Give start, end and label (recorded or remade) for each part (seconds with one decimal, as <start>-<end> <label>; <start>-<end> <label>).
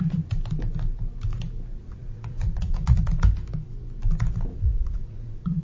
0.0-1.8 recorded; 1.8-3.0 remade; 3.0-4.5 recorded; 4.5-5.6 remade